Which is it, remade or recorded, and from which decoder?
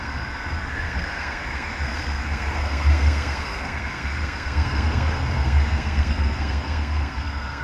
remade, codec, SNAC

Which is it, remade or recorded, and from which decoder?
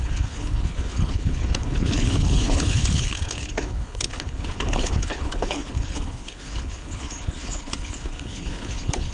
remade, codec, HILCodec